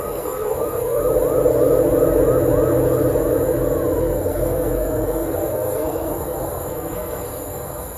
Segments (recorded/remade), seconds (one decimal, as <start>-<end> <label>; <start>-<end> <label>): 0.0-1.0 remade; 1.0-4.0 recorded; 4.0-8.0 remade